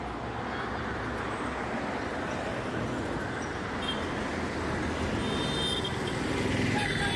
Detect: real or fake real